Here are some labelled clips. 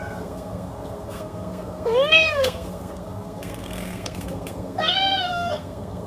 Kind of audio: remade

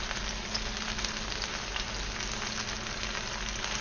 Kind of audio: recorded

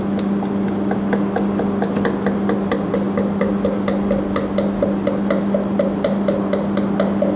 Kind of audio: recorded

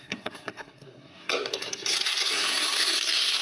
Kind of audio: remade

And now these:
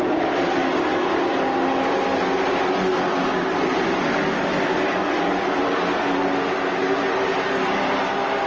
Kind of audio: recorded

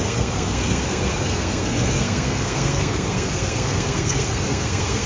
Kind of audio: remade